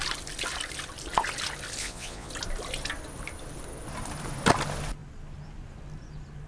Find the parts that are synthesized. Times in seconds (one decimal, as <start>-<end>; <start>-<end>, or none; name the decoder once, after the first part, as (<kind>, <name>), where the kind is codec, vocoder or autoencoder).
1.8-2.3 (vocoder, Vocos)